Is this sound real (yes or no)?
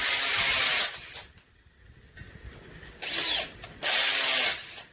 yes